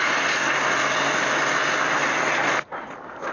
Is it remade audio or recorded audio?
recorded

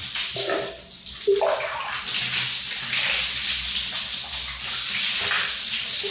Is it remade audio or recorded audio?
recorded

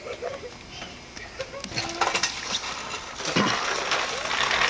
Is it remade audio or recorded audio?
recorded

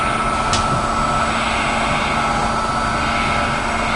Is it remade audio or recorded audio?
recorded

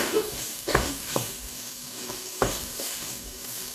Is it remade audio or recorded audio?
remade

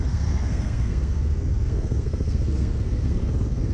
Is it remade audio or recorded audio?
remade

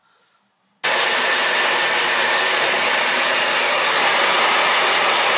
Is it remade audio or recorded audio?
recorded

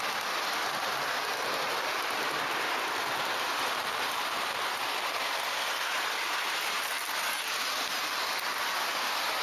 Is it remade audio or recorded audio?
recorded